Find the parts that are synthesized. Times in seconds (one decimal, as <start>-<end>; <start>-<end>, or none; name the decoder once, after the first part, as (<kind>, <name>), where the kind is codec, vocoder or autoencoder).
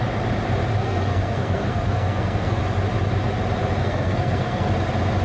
0.8-2.6 (codec, SNAC); 3.8-4.7